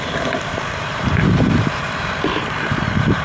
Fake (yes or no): yes